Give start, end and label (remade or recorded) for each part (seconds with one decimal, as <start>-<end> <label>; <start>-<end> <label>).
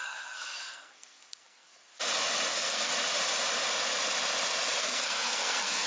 0.0-1.9 remade; 1.9-2.5 recorded; 2.5-2.9 remade; 2.9-4.8 recorded; 4.8-5.9 remade